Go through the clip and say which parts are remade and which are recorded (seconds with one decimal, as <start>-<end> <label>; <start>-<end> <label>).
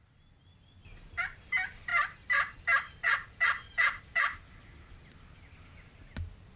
0.0-6.6 recorded